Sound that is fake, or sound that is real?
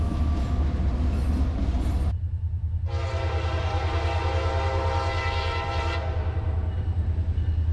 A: real